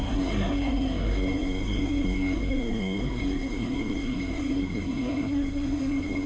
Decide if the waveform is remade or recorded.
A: remade